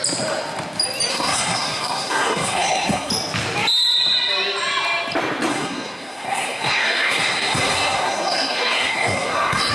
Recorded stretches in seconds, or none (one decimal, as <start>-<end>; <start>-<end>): 0.0-1.1; 3.1-5.5